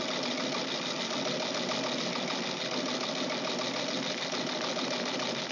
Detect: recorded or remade recorded